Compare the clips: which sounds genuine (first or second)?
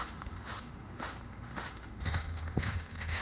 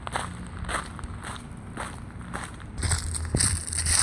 second